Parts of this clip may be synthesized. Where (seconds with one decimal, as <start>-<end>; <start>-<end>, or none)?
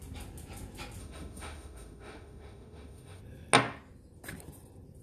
1.0-3.2